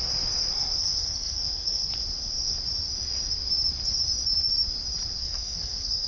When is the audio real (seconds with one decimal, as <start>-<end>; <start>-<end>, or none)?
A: 0.0-0.4; 1.9-5.2